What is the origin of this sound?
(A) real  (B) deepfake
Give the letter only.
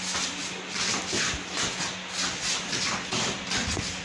A